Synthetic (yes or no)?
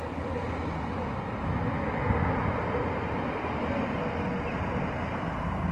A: no